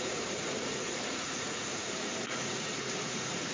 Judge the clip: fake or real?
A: fake